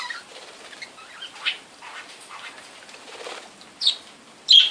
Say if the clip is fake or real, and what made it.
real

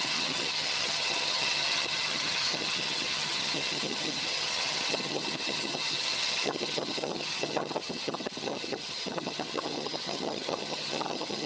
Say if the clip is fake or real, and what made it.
fake, vocoder, HiFi-GAN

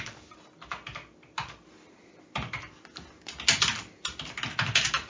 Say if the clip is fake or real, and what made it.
real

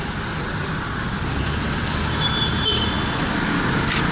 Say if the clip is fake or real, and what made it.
real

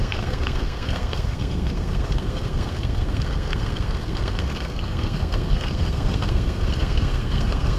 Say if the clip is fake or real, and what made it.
fake, codec, SNAC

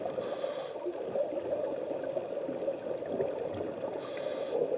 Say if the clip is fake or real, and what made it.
real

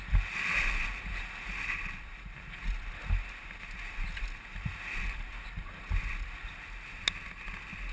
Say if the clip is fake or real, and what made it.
real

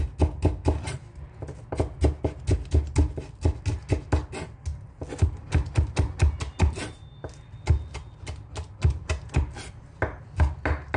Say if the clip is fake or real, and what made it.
real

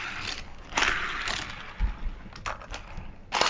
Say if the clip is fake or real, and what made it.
real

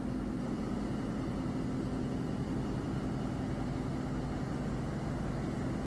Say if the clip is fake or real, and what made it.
real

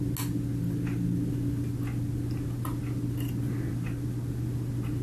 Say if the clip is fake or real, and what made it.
real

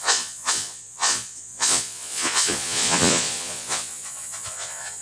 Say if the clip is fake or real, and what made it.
fake, vocoder, Vocos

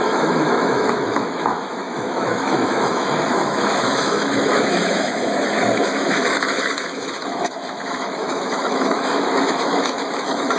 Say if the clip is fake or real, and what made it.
fake, autoencoder, DAC-VAE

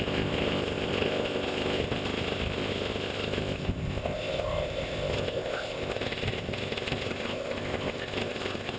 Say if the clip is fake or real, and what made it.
fake, codec, ZipCodec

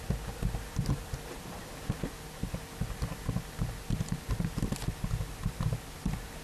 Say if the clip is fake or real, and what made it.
real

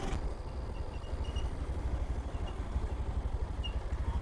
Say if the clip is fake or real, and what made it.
real